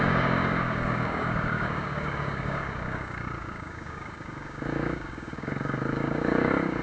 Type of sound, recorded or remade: remade